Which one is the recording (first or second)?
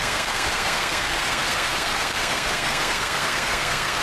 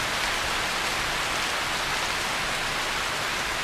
second